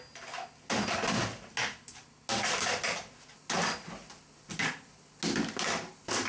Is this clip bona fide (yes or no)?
yes